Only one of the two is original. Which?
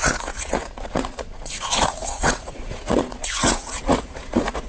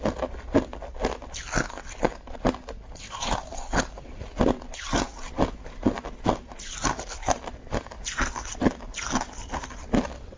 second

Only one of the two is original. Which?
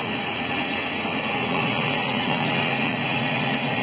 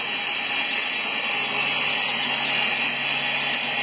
second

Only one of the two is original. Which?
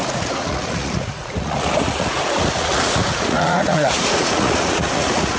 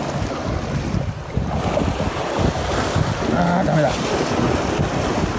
second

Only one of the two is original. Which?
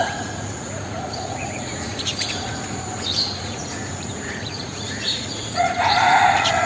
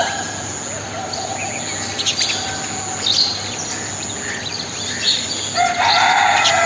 second